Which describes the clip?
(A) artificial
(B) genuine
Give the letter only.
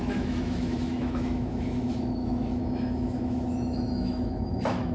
A